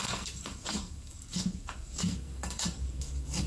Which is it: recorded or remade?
remade